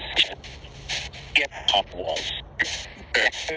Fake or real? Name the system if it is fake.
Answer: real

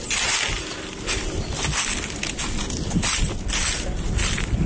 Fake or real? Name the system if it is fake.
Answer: real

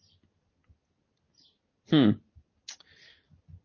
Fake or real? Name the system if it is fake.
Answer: real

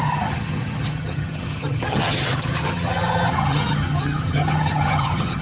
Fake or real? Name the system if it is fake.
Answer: fake, vocoder, HiFi-GAN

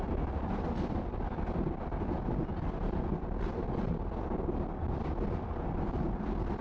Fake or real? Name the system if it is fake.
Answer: real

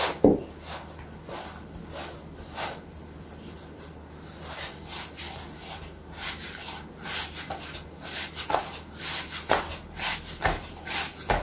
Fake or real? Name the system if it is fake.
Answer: real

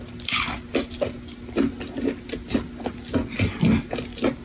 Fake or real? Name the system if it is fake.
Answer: real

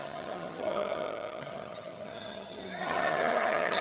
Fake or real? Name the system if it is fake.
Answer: fake, vocoder, HiFi-GAN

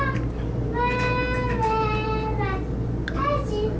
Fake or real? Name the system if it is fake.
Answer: real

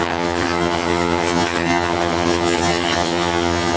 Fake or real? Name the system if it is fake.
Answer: fake, vocoder, HiFi-GAN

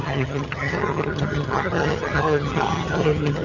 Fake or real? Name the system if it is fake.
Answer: fake, vocoder, HiFi-GAN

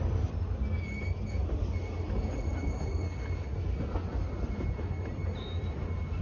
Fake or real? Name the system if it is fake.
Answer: real